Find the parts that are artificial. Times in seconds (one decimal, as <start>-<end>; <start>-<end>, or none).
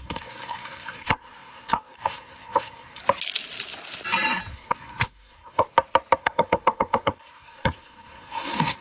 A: 0.0-3.0; 4.5-5.7; 6.2-8.8